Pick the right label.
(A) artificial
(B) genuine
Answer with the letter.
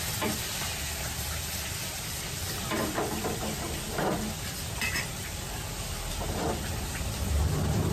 A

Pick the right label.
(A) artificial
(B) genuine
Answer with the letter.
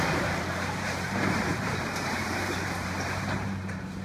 A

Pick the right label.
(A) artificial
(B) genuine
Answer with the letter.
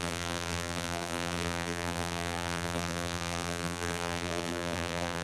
A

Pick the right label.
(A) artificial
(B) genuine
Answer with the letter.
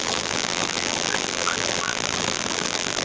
A